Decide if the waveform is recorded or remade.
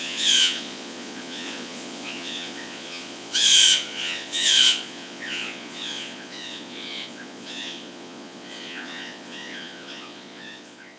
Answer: remade